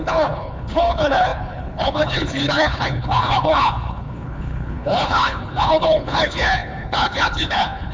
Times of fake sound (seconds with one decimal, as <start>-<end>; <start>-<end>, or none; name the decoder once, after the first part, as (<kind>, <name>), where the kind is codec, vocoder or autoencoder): 0.0-7.9 (codec, HILCodec)